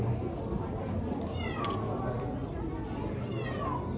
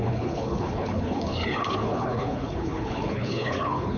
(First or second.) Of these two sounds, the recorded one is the first